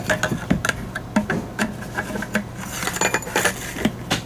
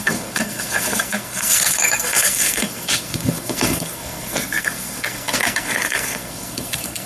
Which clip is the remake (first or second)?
second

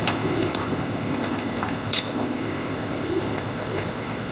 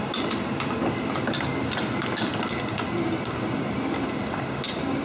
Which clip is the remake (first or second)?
first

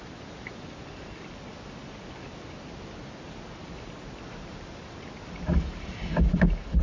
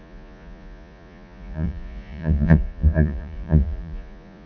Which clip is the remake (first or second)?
second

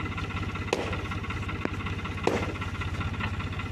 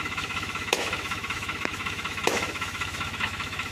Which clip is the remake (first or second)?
second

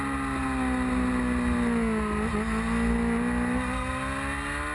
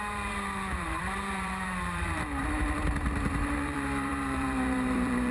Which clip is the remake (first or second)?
second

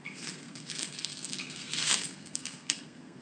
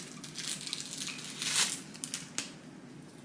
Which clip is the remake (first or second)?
first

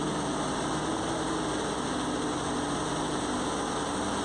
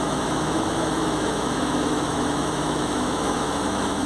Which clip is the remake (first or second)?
second